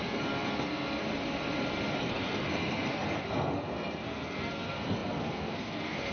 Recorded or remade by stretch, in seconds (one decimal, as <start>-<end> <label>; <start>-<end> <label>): 0.0-1.0 remade; 1.0-2.0 recorded; 2.0-6.1 remade